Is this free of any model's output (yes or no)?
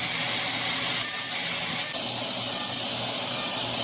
yes